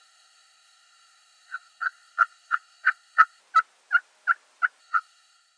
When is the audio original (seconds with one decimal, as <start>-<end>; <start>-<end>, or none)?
3.4-4.8